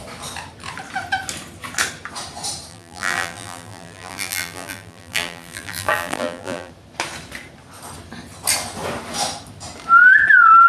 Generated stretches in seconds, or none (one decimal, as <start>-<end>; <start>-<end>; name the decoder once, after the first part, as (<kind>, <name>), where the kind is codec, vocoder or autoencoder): 2.7-6.7 (vocoder, BigVGAN v2)